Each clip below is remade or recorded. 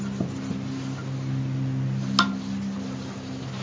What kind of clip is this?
recorded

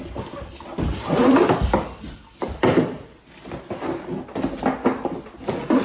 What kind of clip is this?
recorded